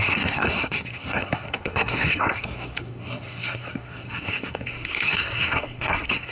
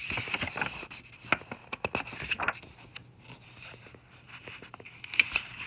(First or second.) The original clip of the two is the second